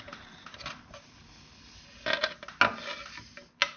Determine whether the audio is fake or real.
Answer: real